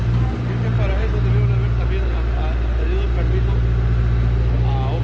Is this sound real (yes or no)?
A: yes